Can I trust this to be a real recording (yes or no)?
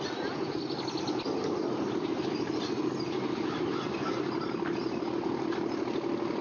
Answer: yes